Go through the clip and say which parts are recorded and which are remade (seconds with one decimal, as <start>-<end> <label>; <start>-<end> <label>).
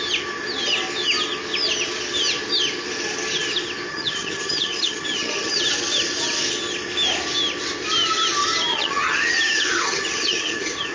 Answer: 0.0-3.9 recorded; 3.9-5.6 remade; 5.6-8.7 recorded; 8.7-10.9 remade